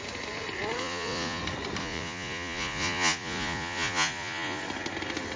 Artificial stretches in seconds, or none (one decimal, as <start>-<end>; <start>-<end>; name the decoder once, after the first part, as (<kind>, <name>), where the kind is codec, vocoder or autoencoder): 0.8-1.4 (vocoder, Vocos); 1.8-4.6